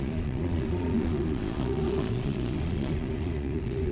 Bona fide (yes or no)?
no